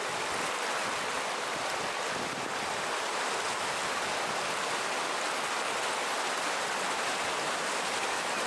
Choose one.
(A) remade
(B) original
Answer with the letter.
B